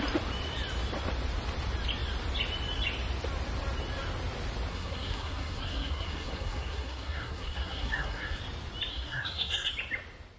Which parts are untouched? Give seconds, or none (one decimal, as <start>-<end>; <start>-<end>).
0.0-4.7; 8.4-8.9; 9.7-10.4